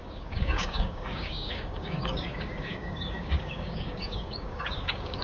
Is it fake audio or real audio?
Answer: fake